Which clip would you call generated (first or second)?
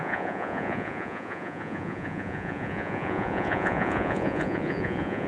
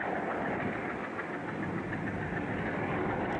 first